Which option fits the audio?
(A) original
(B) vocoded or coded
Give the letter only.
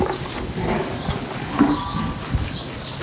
B